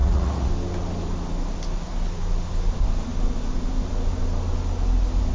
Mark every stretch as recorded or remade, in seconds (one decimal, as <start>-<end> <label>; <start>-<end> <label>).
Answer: 0.0-0.5 remade; 0.5-5.3 recorded